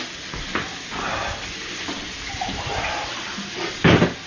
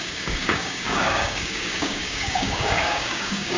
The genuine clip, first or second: first